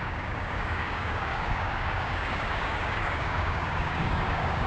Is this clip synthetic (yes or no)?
yes